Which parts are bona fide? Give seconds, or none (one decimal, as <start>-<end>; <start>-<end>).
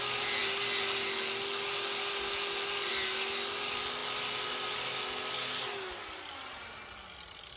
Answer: 0.0-7.6